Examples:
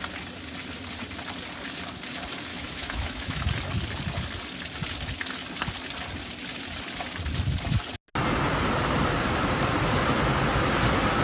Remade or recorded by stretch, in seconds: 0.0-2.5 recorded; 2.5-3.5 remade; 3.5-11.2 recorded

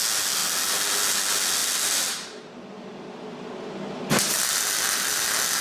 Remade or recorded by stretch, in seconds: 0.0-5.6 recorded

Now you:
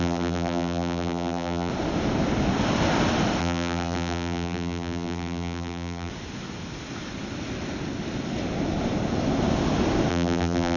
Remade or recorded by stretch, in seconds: 0.0-1.7 remade; 1.7-3.4 recorded; 3.4-6.1 remade; 6.1-10.1 recorded; 10.1-10.8 remade